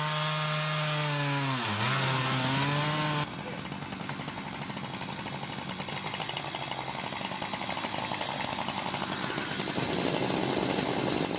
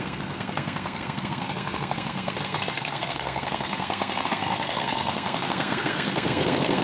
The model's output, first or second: second